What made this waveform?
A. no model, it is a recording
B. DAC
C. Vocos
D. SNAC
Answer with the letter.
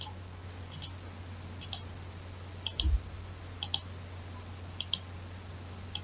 A